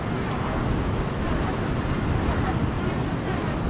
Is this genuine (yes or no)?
yes